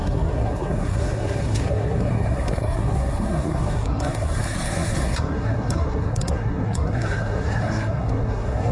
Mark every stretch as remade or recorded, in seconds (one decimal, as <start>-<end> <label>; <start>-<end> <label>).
0.0-8.7 remade